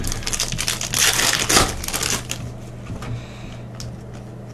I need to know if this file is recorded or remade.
recorded